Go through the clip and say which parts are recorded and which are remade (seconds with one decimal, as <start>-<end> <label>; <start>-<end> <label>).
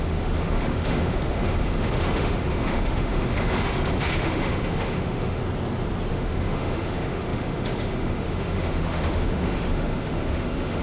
0.0-5.4 remade; 5.4-6.1 recorded; 6.1-10.8 remade